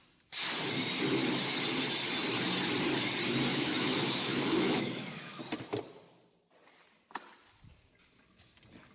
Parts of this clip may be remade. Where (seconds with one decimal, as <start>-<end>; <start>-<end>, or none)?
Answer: 3.5-5.4